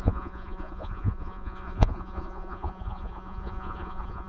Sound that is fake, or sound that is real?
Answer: fake